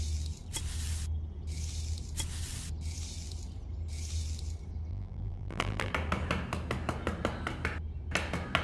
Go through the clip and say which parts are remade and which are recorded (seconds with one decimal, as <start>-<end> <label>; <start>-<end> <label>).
0.0-4.9 recorded; 4.9-5.9 remade; 5.9-8.6 recorded